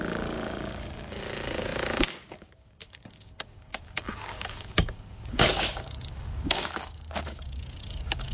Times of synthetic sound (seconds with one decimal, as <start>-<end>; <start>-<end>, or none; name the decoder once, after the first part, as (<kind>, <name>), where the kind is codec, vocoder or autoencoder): 0.0-8.3 (codec, DAC)